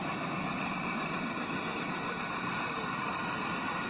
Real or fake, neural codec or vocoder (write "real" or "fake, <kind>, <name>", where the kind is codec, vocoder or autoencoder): real